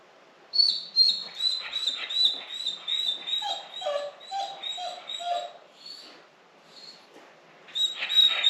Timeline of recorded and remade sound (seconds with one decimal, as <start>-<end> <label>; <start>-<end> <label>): 0.0-8.5 recorded